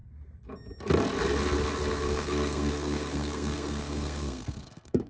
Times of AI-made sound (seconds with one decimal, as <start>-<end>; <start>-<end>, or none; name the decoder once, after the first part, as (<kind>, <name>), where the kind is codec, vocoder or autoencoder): 1.9-5.1 (codec, SNAC)